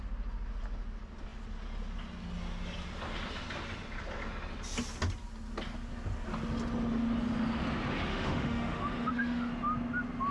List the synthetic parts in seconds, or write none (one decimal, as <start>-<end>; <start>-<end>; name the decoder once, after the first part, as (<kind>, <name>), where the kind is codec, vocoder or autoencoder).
8.1-9.5 (autoencoder, DAC-VAE)

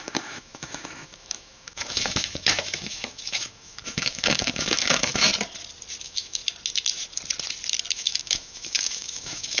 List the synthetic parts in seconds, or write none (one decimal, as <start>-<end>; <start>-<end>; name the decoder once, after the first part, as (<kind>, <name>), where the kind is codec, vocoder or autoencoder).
0.0-5.3 (autoencoder, DAC-VAE); 6.0-6.4; 7.9-9.6

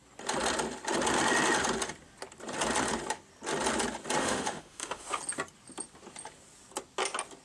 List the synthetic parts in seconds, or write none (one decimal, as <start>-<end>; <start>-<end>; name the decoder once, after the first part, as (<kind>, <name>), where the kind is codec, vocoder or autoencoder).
4.2-5.2 (autoencoder, DAC-VAE)

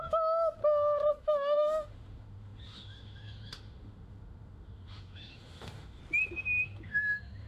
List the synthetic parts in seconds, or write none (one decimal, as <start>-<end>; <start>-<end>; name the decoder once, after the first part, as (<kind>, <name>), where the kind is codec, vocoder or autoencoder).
0.0-0.6 (autoencoder, DAC-VAE); 1.1-6.0; 6.6-7.5

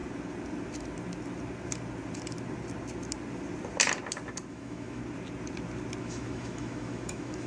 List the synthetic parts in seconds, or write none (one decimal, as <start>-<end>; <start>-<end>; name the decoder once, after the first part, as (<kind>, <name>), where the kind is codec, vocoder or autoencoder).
4.5-5.0 (autoencoder, DAC-VAE); 6.0-7.5

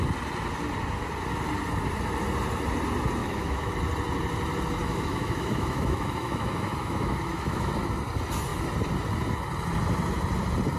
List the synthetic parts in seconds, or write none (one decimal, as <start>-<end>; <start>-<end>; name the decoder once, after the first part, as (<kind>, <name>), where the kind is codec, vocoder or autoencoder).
3.2-3.7 (autoencoder, DAC-VAE); 4.8-7.7